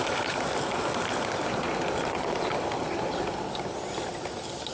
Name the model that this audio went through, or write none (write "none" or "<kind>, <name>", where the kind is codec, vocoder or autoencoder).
none